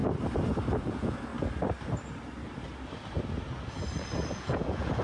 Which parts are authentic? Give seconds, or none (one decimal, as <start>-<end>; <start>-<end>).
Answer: 0.0-0.7; 1.3-4.3